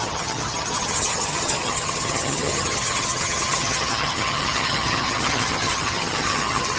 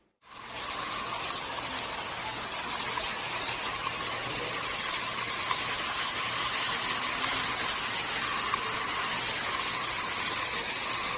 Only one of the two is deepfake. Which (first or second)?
first